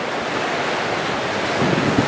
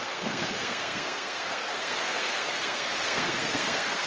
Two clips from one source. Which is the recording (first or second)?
first